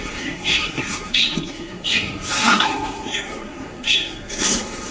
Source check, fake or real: fake